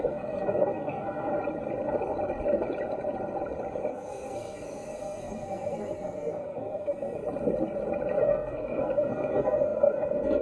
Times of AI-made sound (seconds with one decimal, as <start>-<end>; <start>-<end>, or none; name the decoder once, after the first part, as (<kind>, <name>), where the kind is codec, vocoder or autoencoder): 0.0-1.3 (codec, SNAC); 3.9-7.2; 8.2-10.4